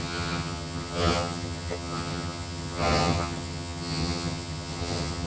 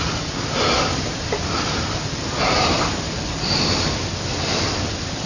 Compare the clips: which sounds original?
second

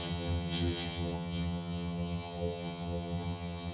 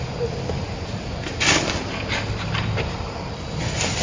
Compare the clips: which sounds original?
second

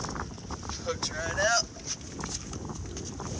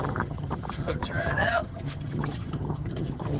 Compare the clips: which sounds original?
first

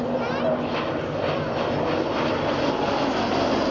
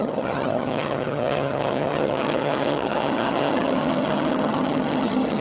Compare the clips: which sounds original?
first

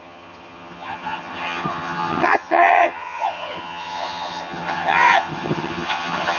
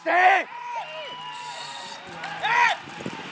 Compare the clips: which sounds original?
second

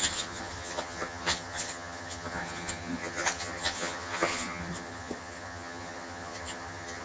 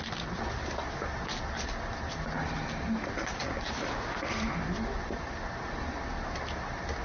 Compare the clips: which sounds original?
second